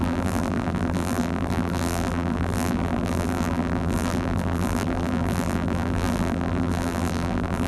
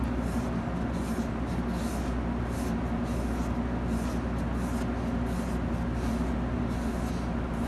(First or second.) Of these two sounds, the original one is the second